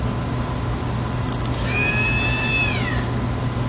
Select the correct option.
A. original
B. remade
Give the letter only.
A